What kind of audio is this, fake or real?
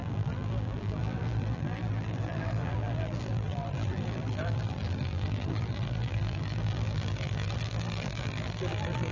fake